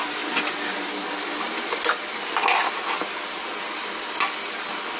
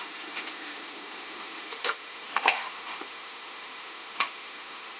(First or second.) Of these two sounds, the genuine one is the first